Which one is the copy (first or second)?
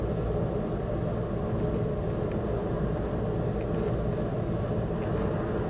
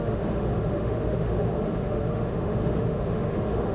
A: second